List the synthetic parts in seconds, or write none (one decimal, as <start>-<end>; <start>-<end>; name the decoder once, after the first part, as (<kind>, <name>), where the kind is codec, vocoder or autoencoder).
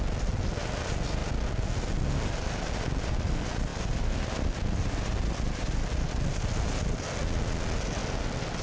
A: none